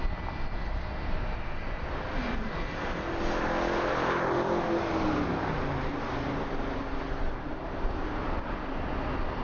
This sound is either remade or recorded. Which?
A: recorded